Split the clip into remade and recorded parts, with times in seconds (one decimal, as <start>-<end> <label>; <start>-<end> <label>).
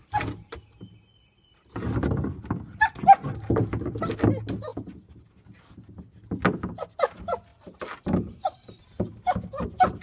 0.0-7.5 recorded; 7.5-8.8 remade; 8.8-10.0 recorded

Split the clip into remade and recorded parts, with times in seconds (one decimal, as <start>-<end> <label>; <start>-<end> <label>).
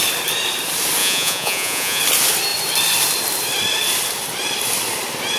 0.0-1.0 recorded; 1.0-2.0 remade; 2.0-5.4 recorded